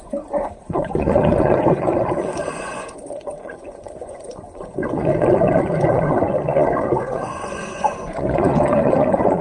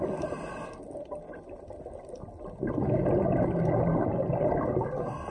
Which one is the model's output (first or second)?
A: first